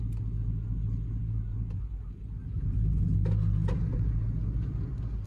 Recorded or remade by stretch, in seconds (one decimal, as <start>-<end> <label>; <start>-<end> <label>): 0.0-1.2 recorded; 1.2-1.8 remade; 1.8-2.4 recorded; 2.4-3.0 remade; 3.0-3.6 recorded; 3.6-4.2 remade; 4.2-5.3 recorded